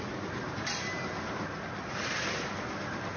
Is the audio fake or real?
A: real